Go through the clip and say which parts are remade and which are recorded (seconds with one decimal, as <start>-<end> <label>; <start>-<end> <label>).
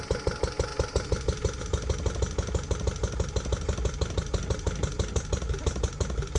0.0-6.4 recorded